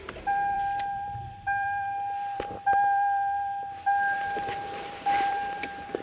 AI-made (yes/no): yes